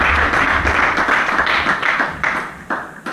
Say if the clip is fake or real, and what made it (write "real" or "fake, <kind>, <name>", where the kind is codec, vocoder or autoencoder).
fake, vocoder, BigVGAN v2